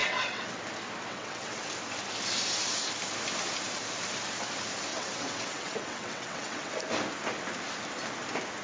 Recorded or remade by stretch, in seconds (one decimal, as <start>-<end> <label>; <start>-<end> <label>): 0.0-0.6 remade; 0.6-1.1 recorded; 1.1-1.7 remade; 1.7-4.9 recorded; 4.9-6.7 remade; 6.7-8.6 recorded